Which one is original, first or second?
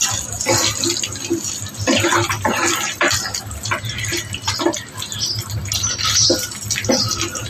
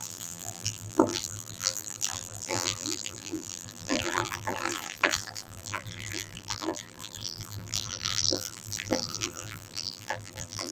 first